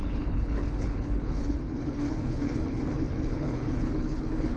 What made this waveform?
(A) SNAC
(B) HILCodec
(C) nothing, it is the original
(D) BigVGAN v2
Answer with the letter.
B